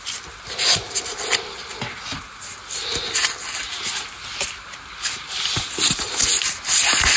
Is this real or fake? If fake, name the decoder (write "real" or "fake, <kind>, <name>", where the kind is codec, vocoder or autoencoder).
real